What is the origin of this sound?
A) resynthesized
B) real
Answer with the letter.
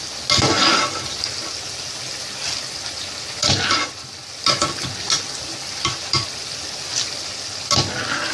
B